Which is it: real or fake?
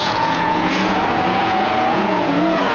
fake